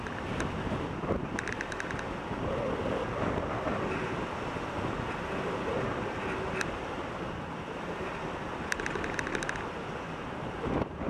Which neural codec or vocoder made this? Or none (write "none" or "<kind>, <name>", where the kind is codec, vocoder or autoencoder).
none